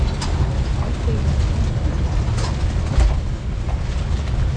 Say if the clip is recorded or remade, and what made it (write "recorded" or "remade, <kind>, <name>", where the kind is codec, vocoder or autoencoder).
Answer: recorded